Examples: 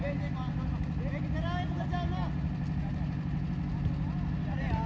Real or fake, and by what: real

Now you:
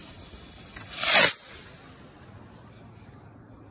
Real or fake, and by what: real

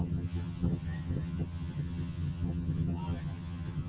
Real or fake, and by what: fake, vocoder, HiFi-GAN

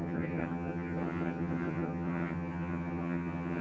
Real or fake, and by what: fake, vocoder, HiFi-GAN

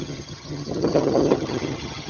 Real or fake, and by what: fake, vocoder, HiFi-GAN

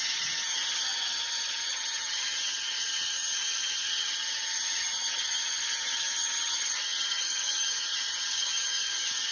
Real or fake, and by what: fake, vocoder, HiFi-GAN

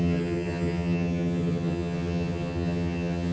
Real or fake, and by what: fake, vocoder, HiFi-GAN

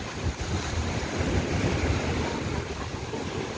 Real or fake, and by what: real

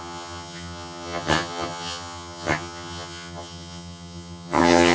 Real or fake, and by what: fake, vocoder, HiFi-GAN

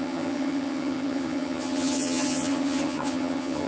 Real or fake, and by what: fake, vocoder, HiFi-GAN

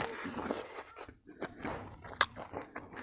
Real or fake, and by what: real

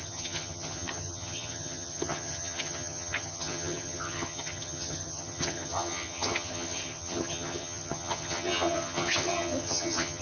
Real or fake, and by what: fake, vocoder, HiFi-GAN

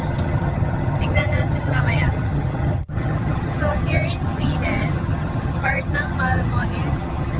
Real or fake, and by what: fake, vocoder, HiFi-GAN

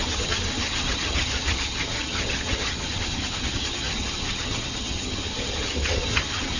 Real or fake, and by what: fake, vocoder, HiFi-GAN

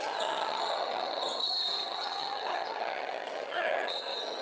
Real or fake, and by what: fake, vocoder, HiFi-GAN